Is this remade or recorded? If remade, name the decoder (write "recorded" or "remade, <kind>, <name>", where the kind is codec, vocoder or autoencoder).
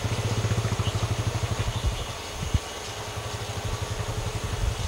recorded